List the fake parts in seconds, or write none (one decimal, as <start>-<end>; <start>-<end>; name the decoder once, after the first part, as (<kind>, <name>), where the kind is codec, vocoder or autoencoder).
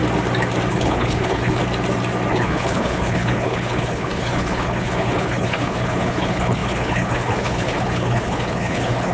0.7-1.6 (codec, HILCodec); 2.3-9.1